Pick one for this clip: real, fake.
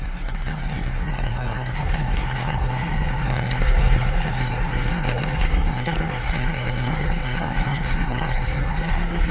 fake